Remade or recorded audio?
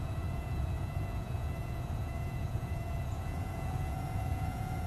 remade